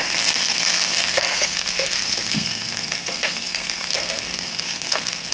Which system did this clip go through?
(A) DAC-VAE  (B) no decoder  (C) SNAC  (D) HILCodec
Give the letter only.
C